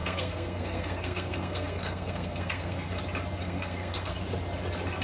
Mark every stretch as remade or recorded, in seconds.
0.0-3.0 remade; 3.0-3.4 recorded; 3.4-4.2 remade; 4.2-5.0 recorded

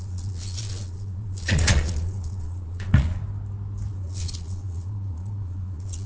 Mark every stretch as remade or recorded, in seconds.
0.0-3.2 remade; 3.2-3.9 recorded; 3.9-6.1 remade

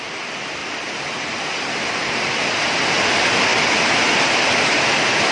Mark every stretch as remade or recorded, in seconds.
0.0-5.3 recorded

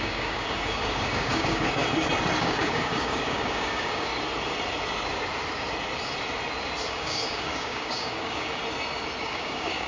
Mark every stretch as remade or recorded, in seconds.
0.0-1.8 remade; 1.8-2.4 recorded; 2.4-4.1 remade; 4.1-6.9 recorded; 6.9-8.6 remade; 8.6-9.2 recorded; 9.2-9.9 remade

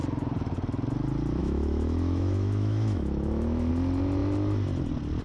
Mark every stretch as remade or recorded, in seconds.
0.0-1.4 recorded; 1.4-3.7 remade; 3.7-5.2 recorded